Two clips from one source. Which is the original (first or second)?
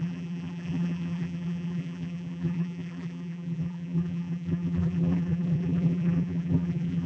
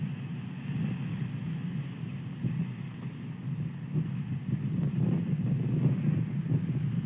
second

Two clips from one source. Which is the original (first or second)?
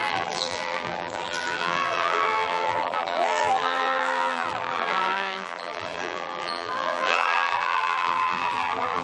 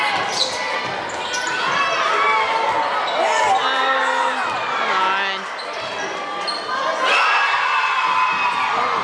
second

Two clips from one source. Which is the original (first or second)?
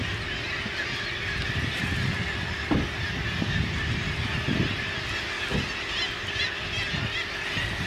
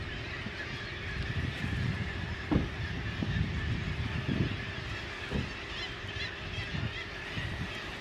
first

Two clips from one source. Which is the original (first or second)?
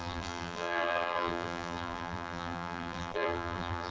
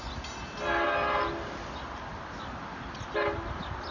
second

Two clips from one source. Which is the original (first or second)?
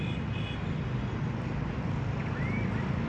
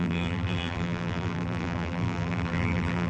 first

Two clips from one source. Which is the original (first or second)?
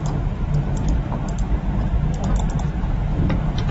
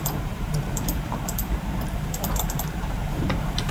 first